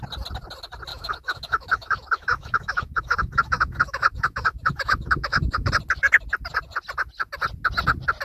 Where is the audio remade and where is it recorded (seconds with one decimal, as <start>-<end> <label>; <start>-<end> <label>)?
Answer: 0.0-0.9 recorded; 0.9-5.7 remade; 5.7-8.2 recorded